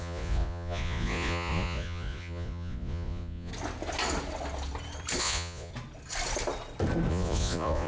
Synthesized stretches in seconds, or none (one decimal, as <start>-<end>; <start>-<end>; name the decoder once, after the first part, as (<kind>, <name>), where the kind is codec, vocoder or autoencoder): 0.0-3.5 (vocoder, Vocos); 5.2-5.7; 7.1-7.9